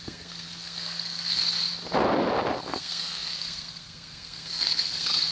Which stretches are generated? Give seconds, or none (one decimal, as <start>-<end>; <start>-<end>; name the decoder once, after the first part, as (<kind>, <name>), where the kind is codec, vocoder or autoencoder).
0.0-1.4 (codec, SNAC); 2.6-5.3